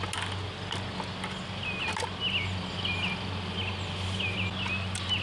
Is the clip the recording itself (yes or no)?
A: yes